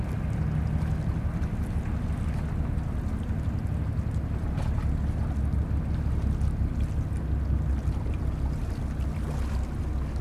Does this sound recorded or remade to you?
recorded